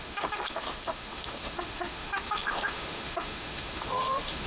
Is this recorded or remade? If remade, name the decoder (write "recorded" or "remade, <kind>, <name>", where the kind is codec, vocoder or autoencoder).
remade, autoencoder, DAC-VAE